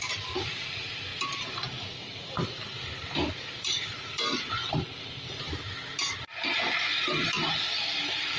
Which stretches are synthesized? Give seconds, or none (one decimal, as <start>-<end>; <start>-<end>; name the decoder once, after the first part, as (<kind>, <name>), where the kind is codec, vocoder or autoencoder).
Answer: 0.0-4.6 (vocoder, BigVGAN v2); 6.4-8.4

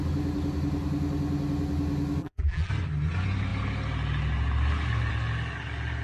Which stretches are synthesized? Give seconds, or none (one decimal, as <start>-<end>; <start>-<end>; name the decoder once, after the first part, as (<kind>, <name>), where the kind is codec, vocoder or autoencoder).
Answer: 2.2-2.7 (vocoder, BigVGAN v2)